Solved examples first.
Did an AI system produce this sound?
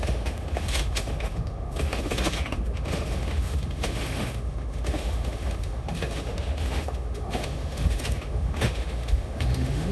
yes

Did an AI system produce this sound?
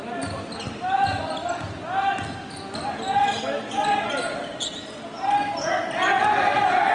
no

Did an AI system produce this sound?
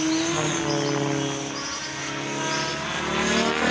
no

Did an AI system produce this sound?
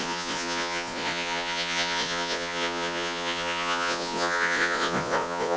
yes